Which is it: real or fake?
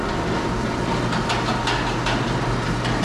real